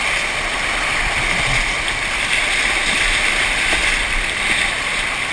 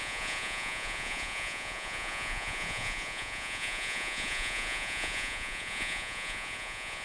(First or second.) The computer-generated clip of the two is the second